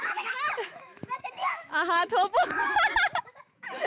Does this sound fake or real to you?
fake